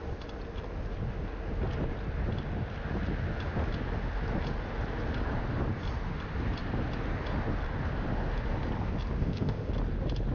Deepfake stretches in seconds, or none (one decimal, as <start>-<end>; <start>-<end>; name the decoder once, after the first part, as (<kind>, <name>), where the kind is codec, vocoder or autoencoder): 9.2-9.7 (codec, ZipCodec)